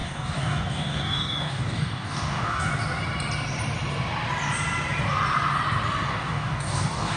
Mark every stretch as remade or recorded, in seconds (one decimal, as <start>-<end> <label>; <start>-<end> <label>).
0.0-2.7 remade; 2.7-6.1 recorded; 6.1-7.2 remade